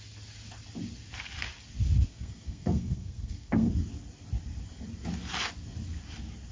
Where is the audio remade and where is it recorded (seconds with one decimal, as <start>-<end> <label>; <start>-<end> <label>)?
0.0-2.1 recorded; 2.1-3.7 remade; 3.7-6.5 recorded